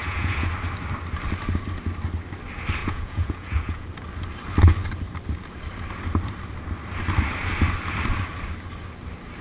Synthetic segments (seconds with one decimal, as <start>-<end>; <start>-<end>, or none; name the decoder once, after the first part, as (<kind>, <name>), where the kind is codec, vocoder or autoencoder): 0.0-0.5 (vocoder, Vocos); 2.8-3.9